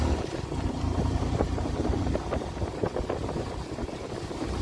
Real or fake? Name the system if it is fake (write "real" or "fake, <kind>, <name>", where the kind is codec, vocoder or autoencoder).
real